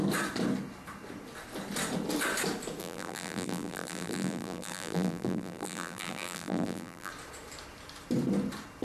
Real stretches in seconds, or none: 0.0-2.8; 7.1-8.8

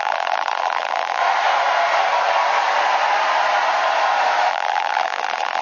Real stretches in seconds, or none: 1.2-4.5

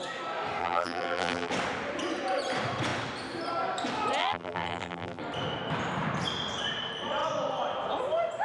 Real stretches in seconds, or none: 0.0-0.6; 1.5-4.2; 5.2-8.4

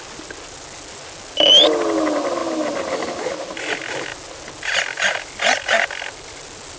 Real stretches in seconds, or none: 0.0-6.8